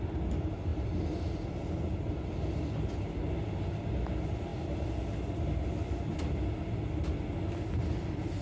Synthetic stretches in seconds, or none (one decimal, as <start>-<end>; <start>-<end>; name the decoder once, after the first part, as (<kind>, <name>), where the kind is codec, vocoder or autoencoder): none